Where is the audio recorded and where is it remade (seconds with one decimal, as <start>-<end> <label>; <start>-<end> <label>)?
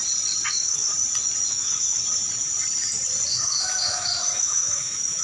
0.0-0.5 recorded; 0.5-0.9 remade; 0.9-1.5 recorded; 1.5-2.0 remade; 2.0-3.3 recorded; 3.3-5.2 remade